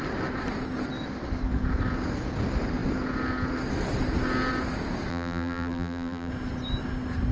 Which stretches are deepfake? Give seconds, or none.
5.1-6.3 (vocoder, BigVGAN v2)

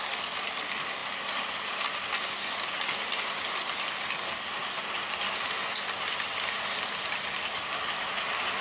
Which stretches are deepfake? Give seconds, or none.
none

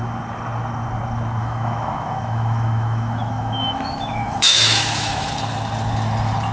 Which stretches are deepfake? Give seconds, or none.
1.4-5.3 (autoencoder, DAC-VAE)

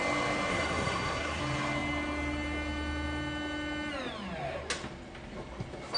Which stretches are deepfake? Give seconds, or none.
0.5-1.4 (codec, SNAC)

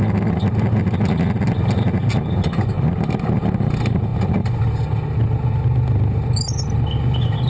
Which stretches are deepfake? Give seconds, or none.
none

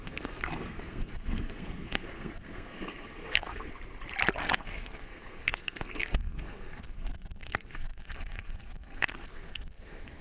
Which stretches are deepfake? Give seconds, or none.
0.0-3.7 (codec, SNAC); 4.4-10.2

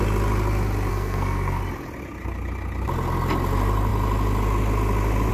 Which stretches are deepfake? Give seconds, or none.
0.9-1.6 (codec, SNAC)

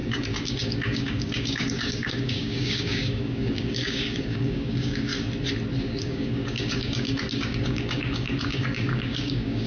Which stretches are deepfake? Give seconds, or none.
0.0-5.1 (codec, DAC); 5.8-9.7